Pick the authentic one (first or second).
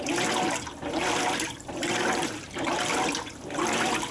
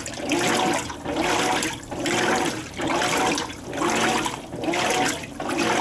second